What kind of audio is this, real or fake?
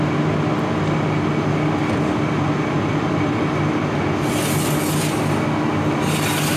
real